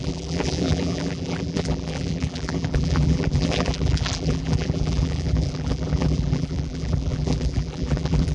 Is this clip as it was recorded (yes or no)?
no